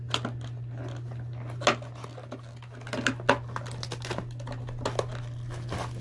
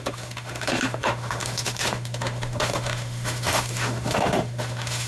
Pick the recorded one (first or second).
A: first